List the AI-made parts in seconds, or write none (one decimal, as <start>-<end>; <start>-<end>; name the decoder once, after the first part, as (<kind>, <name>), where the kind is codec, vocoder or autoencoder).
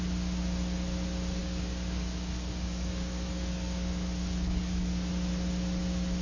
1.4-5.1 (codec, DAC)